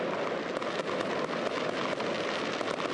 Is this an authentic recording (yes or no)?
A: yes